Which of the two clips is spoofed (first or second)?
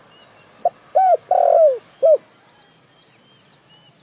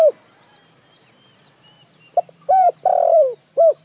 second